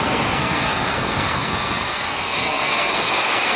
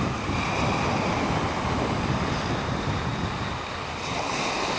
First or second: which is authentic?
second